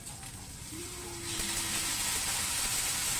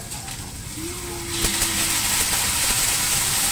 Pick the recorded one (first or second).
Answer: second